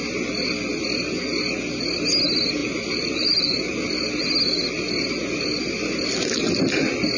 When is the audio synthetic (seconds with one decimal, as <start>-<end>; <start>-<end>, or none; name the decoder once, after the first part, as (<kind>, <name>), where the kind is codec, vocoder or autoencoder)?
2.6-3.7 (vocoder, BigVGAN v2)